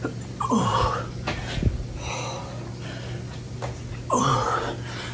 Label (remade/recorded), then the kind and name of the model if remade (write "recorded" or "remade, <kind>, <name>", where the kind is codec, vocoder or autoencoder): recorded